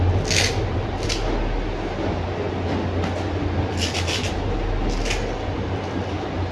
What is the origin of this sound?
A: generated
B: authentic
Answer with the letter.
B